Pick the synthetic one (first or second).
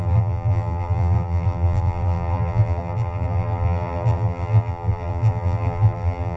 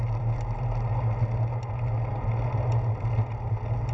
first